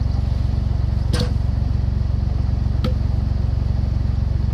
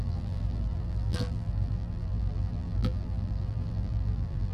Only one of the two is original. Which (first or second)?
first